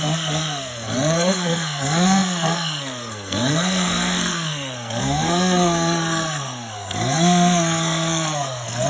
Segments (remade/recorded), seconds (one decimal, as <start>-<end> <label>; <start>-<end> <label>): 0.0-8.9 remade